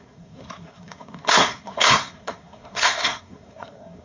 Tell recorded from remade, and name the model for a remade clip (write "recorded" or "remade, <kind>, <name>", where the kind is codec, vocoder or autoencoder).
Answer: remade, codec, SNAC